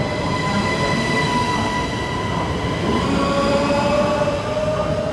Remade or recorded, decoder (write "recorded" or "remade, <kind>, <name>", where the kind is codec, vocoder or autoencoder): recorded